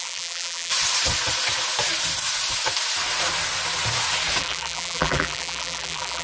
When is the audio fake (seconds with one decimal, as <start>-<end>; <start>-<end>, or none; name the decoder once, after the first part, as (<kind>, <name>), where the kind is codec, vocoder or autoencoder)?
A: 0.0-0.7 (vocoder, BigVGAN v2); 4.4-6.2